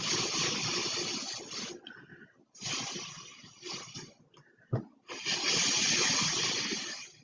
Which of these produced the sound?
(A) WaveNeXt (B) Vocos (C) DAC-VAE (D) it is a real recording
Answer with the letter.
D